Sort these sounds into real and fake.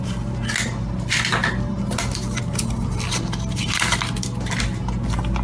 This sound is real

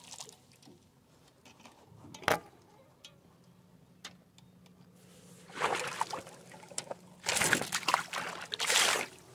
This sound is real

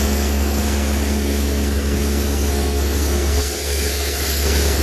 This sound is fake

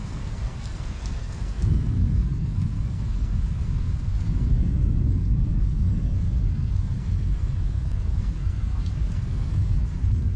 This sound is fake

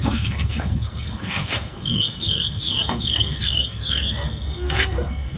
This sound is fake